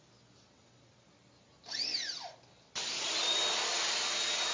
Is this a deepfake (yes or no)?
no